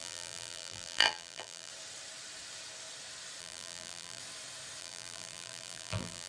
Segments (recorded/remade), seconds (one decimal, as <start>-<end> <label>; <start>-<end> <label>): 0.0-1.7 remade; 1.7-3.4 recorded; 3.4-4.2 remade; 4.2-4.8 recorded; 4.8-6.3 remade